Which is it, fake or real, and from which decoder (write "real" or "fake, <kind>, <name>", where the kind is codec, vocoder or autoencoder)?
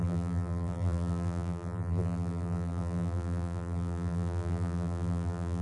fake, vocoder, BigVGAN v2